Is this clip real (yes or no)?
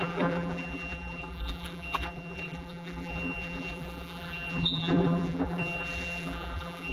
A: no